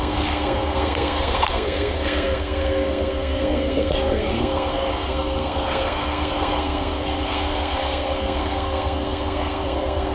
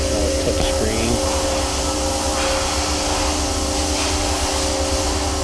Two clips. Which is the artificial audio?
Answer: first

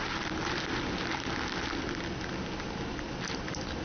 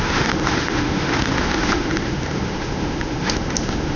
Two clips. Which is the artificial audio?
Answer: second